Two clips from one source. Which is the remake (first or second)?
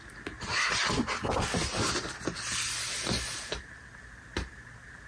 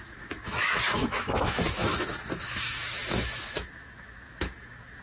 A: second